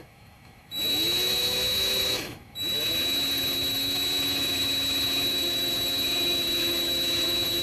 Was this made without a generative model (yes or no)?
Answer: no